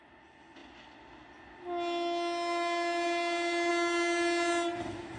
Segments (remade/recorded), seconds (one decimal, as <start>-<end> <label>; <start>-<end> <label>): 0.0-5.2 recorded